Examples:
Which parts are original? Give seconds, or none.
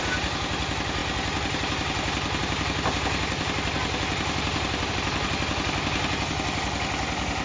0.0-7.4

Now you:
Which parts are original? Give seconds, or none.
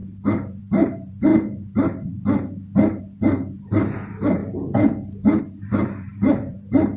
1.3-3.0; 4.4-5.4